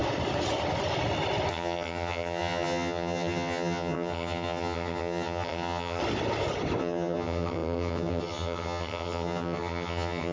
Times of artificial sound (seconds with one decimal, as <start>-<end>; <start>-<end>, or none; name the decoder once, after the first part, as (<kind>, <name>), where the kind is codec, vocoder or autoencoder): 1.5-6.0 (vocoder, HiFi-GAN); 6.8-10.3